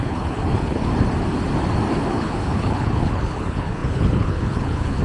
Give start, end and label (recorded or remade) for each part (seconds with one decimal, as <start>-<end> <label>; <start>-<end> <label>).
0.0-0.9 remade; 0.9-1.9 recorded; 1.9-5.0 remade